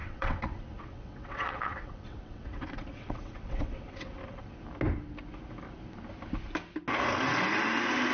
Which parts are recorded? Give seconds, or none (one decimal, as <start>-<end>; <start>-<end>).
4.6-8.1